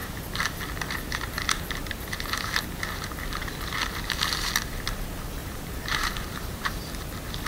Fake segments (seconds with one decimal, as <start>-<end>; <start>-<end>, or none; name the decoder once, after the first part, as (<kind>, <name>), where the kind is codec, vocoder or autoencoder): 5.4-6.9 (vocoder, BigVGAN v2)